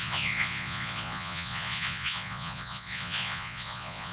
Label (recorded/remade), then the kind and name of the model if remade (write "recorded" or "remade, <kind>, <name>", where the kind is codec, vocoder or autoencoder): remade, vocoder, Vocos